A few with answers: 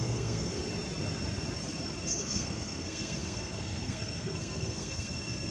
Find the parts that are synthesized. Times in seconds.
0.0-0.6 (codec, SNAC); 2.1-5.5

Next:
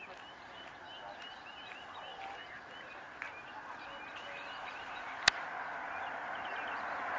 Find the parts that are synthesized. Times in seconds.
none

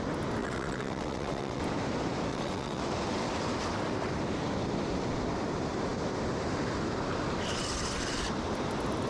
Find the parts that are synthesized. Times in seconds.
0.4-1.6 (vocoder, WaveNeXt); 2.3-2.8

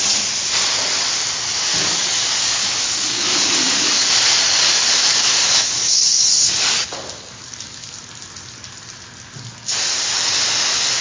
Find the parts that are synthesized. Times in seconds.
1.7-4.1 (codec, DAC); 5.1-7.9

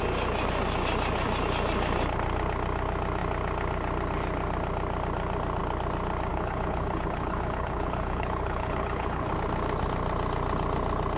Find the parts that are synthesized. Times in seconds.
6.3-9.3 (codec, HILCodec)